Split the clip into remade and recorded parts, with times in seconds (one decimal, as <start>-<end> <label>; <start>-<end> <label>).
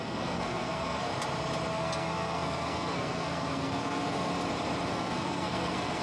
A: 0.0-1.1 remade; 1.1-1.7 recorded; 1.7-4.3 remade; 4.3-4.9 recorded; 4.9-6.0 remade